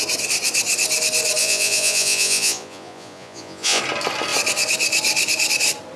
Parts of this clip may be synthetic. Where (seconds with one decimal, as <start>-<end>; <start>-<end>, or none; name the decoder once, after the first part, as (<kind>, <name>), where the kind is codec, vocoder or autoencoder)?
1.4-3.8 (vocoder, Vocos)

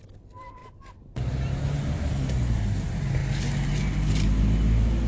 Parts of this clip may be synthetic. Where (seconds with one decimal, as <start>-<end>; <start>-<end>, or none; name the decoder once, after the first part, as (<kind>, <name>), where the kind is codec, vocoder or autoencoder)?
none